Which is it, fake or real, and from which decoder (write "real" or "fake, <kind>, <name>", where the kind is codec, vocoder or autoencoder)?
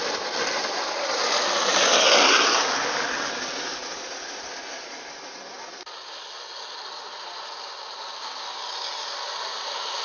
real